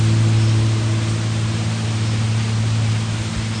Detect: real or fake real